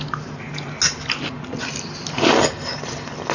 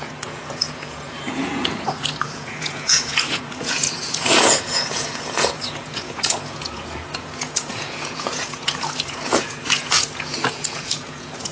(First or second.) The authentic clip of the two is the first